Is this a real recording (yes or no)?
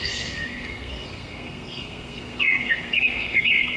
no